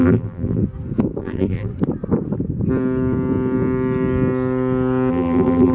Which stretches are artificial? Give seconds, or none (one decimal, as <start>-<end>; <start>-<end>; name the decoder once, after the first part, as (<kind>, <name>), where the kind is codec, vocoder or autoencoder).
0.0-0.6 (vocoder, BigVGAN v2); 1.2-1.7; 5.1-5.7